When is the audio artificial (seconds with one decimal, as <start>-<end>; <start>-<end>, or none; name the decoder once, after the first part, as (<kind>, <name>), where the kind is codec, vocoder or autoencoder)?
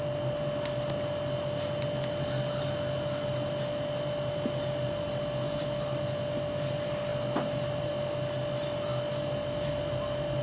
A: none